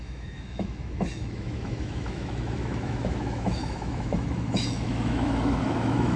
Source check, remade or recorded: remade